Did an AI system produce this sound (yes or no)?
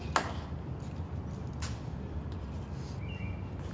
no